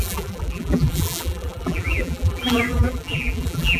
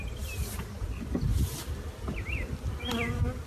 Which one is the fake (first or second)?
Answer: first